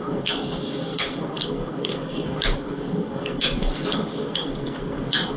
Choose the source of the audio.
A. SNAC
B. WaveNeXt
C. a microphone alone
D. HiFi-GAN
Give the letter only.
A